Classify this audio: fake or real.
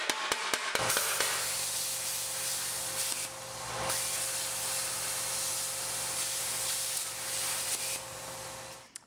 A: real